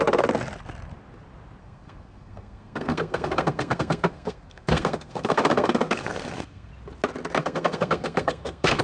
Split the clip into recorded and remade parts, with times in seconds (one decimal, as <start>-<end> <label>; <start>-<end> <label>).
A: 0.0-1.6 recorded; 1.6-6.7 remade; 6.7-7.4 recorded; 7.4-8.8 remade